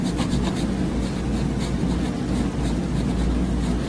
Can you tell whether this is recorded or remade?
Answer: recorded